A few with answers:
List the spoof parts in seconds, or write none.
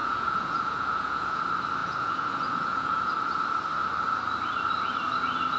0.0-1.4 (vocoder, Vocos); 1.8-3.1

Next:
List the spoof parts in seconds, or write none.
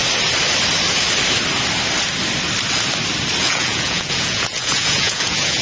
3.4-5.6 (vocoder, Vocos)